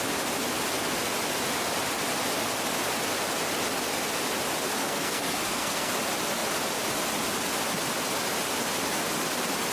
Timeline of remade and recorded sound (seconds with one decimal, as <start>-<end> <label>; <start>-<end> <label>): 0.0-4.8 recorded; 4.8-5.9 remade; 5.9-9.7 recorded